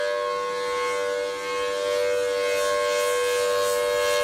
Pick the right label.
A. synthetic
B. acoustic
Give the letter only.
B